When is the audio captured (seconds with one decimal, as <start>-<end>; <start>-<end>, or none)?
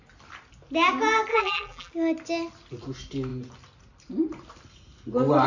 0.0-1.3; 1.9-5.5